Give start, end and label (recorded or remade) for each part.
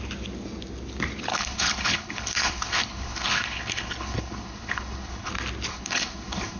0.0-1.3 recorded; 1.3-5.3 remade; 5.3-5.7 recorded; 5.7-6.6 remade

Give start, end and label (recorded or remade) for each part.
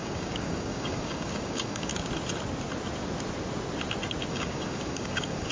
0.0-1.9 remade; 1.9-4.3 recorded; 4.3-5.5 remade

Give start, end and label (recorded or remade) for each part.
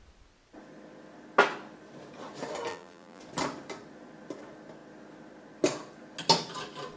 0.0-2.7 recorded; 2.7-3.2 remade; 3.2-7.0 recorded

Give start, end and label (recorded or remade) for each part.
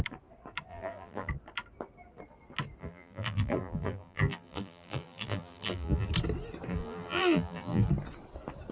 0.0-0.7 recorded; 0.7-1.3 remade; 1.3-2.8 recorded; 2.8-6.1 remade; 6.1-6.7 recorded; 6.7-7.9 remade; 7.9-8.7 recorded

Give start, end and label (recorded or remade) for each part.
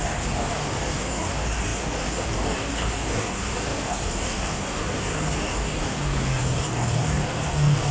0.0-7.9 remade